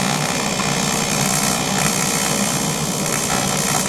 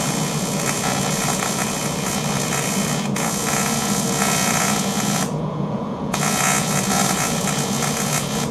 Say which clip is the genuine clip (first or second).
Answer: first